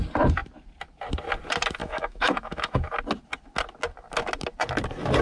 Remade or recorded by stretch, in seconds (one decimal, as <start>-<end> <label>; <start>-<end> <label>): 0.0-1.8 recorded; 1.8-2.9 remade; 2.9-5.2 recorded